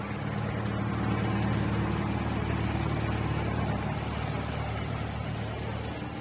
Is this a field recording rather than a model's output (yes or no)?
yes